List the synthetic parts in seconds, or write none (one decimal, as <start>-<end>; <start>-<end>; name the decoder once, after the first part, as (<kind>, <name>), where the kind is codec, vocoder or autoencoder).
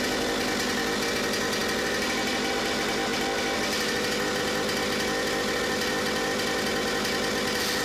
none